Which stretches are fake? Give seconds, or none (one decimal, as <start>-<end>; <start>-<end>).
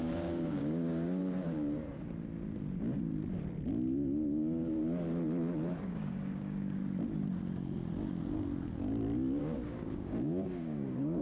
0.0-1.2; 5.8-6.8; 9.4-11.2